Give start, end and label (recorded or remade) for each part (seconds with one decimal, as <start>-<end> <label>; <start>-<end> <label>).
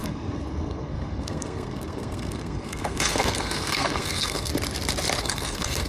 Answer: 0.0-4.5 remade; 4.5-5.2 recorded; 5.2-5.9 remade